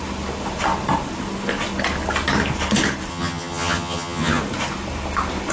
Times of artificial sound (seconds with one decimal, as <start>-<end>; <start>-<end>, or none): 3.1-4.4